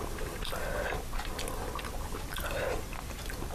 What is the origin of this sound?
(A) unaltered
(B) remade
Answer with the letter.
A